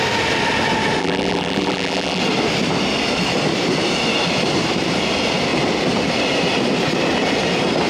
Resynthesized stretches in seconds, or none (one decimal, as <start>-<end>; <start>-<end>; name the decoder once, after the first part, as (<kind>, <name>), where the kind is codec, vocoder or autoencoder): 1.0-2.2 (vocoder, BigVGAN v2)